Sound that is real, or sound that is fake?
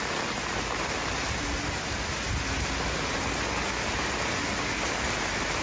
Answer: real